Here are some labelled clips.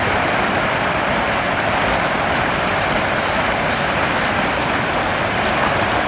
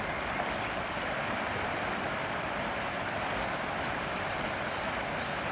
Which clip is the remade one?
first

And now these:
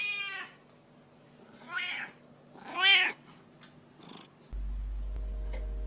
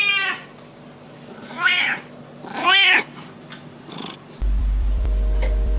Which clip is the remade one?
second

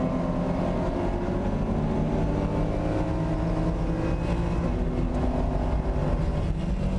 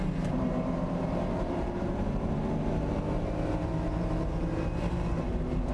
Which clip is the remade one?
second